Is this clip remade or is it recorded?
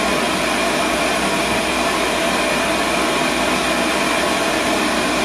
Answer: recorded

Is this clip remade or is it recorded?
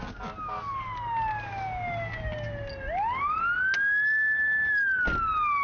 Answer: recorded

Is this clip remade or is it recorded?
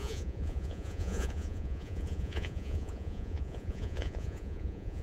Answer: remade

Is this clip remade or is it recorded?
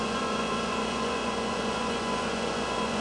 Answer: remade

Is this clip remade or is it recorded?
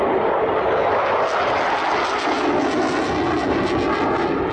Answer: recorded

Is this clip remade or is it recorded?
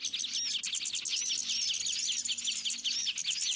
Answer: recorded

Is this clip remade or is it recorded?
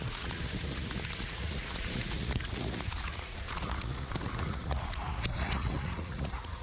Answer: remade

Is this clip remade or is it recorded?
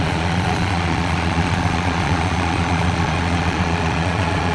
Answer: remade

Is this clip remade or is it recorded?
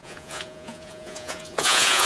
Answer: remade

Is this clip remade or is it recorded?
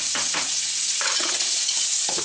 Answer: remade